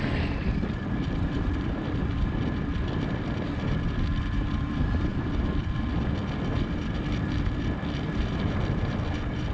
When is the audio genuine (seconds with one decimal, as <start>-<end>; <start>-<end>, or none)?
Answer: none